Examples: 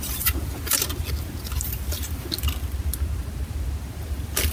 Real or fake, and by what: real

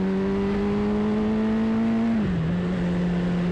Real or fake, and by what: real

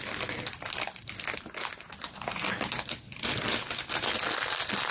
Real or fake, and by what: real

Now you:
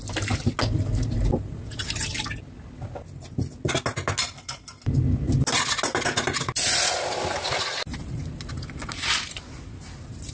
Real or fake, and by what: real